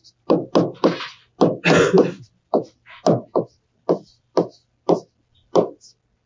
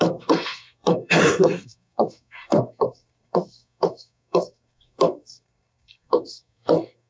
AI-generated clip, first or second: second